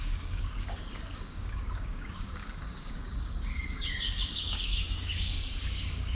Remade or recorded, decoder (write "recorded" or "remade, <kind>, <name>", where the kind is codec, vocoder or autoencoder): remade, codec, DAC